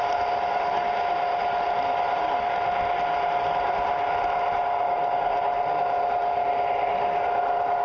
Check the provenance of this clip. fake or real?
real